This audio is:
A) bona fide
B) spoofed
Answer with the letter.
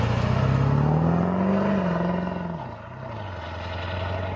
A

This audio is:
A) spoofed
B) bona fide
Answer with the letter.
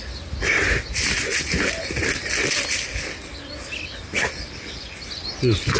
B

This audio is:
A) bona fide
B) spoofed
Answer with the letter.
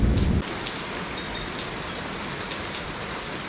A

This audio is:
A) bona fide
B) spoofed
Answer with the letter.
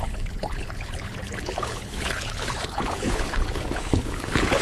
B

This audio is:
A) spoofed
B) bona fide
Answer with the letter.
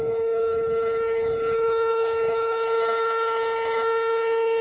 A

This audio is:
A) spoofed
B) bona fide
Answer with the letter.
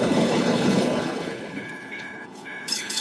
A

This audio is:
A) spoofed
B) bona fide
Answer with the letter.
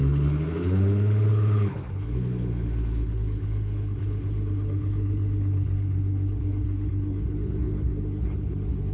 A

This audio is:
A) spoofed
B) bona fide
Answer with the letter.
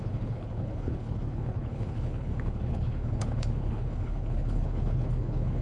A